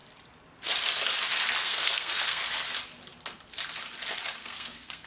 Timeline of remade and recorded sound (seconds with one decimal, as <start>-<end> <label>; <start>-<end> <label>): 0.0-1.6 recorded; 1.6-2.4 remade; 2.4-4.4 recorded; 4.4-5.1 remade